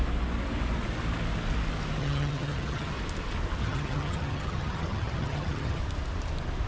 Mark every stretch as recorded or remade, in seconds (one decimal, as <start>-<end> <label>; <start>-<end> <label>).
0.0-2.0 recorded; 2.0-2.9 remade; 2.9-3.6 recorded; 3.6-5.8 remade; 5.8-6.7 recorded